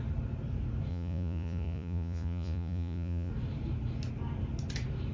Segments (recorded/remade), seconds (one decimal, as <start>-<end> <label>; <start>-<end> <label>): 0.0-0.9 recorded; 0.9-3.3 remade; 3.3-5.1 recorded